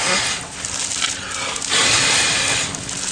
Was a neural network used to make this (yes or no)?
no